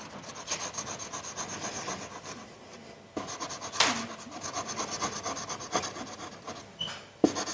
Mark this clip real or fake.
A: real